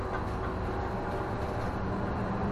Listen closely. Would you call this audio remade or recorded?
recorded